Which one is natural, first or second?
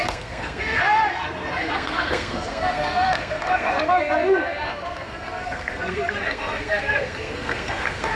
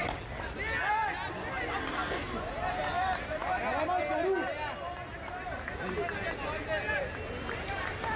second